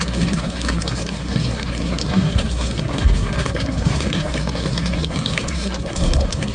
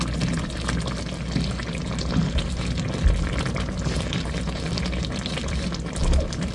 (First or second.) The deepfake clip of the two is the first